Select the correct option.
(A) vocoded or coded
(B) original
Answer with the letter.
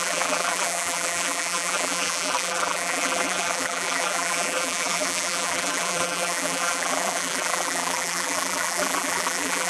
A